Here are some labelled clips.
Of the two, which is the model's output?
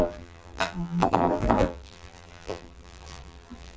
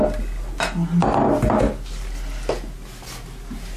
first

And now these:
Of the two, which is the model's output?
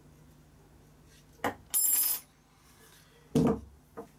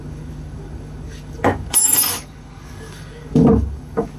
second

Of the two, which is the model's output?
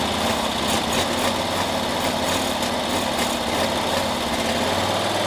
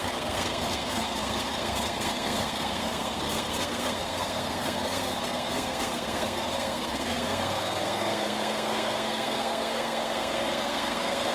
second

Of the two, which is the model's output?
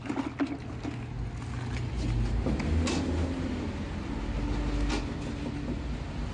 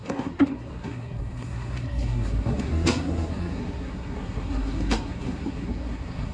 second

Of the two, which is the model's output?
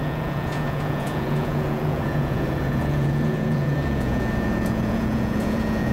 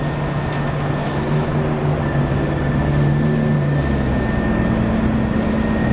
first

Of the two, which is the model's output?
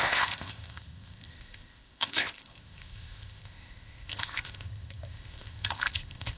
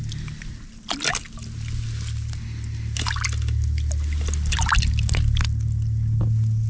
first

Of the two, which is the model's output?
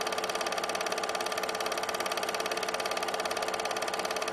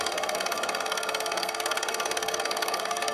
second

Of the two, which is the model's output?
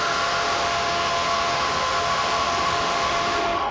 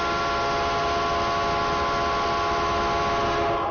first